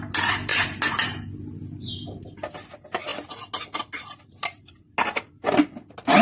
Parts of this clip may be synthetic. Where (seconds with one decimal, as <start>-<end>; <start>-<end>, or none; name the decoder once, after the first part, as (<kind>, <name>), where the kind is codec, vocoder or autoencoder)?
none